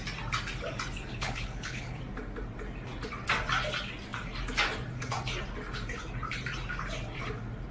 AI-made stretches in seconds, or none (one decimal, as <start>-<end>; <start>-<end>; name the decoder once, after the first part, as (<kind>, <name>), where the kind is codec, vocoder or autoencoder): 1.1-2.0 (codec, HILCodec)